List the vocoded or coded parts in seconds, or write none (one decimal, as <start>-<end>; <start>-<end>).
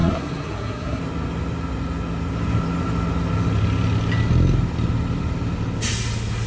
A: 0.0-1.0